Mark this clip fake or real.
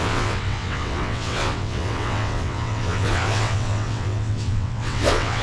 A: fake